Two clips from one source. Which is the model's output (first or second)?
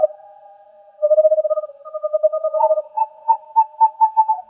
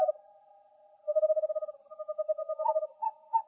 first